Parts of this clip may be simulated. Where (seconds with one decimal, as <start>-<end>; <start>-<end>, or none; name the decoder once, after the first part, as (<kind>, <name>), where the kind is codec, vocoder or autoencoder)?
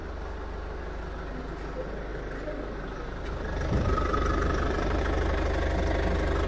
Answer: 2.1-5.0 (vocoder, BigVGAN v2)